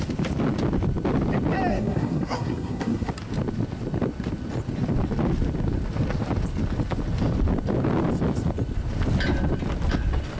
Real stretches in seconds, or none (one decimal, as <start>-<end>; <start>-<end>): 0.0-1.7; 3.1-10.4